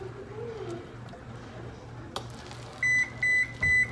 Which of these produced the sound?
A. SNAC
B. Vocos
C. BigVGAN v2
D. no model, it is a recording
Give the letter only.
D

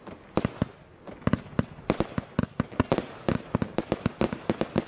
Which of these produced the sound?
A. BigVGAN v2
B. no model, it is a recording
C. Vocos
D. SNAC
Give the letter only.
B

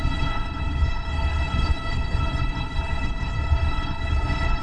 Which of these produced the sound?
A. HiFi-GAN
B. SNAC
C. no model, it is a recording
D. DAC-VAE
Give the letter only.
B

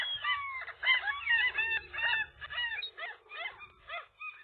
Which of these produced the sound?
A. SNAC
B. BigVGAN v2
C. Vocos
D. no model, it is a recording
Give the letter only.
D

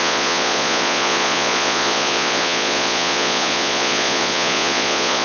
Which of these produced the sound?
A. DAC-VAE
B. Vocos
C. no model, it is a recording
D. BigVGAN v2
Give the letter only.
B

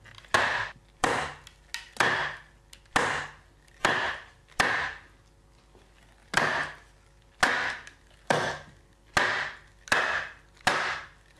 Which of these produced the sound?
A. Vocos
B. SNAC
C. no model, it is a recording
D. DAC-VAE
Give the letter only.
C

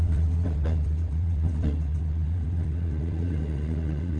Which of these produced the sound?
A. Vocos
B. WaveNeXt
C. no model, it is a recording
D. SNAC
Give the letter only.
B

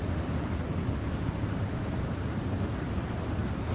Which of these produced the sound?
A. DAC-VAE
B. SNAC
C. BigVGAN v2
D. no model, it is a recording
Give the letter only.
D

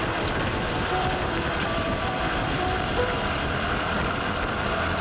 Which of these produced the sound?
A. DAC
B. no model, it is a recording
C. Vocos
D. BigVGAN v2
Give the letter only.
D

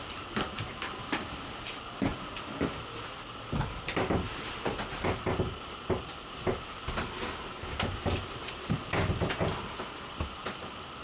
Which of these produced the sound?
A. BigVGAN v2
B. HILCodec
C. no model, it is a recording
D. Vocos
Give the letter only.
C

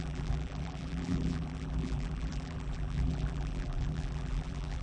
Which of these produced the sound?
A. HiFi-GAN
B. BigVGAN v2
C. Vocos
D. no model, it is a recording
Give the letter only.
B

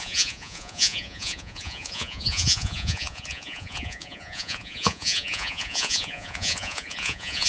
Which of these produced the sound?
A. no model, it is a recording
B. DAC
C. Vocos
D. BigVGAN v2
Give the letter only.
C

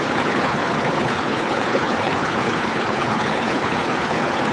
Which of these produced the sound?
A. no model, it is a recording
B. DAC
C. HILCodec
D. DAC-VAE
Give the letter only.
C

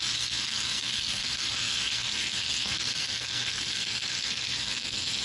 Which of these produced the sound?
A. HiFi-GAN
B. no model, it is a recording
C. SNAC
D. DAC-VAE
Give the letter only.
C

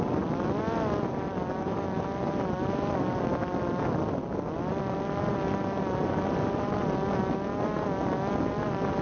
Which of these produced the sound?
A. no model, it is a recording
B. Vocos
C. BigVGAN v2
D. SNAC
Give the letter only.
A